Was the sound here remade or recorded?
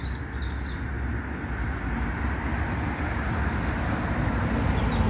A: recorded